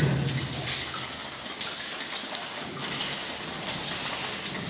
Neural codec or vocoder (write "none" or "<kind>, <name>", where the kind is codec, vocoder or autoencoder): none